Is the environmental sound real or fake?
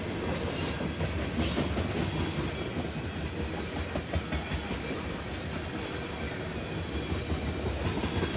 real